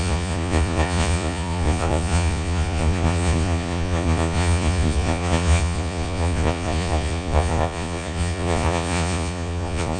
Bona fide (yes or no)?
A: no